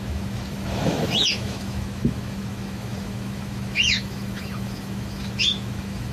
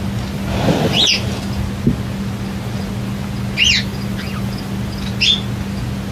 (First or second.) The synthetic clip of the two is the first